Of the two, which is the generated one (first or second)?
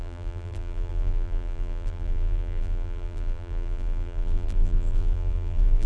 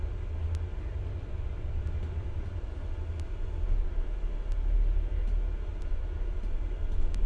first